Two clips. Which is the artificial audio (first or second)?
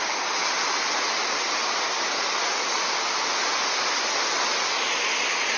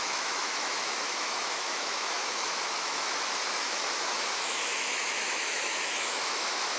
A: second